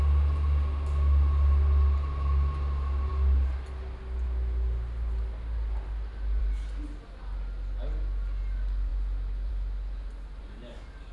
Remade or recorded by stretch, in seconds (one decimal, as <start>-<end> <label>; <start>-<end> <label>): 0.0-11.1 recorded